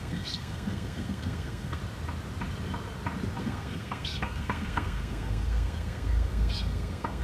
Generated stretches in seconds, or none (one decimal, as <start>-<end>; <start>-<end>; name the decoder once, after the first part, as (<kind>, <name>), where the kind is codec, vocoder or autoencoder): 0.0-1.8 (codec, SNAC); 3.4-7.2